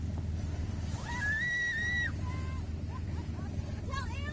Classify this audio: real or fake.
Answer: real